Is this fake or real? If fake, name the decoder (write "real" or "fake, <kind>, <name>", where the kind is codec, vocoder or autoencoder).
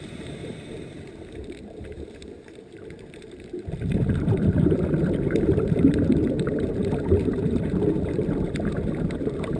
fake, vocoder, BigVGAN v2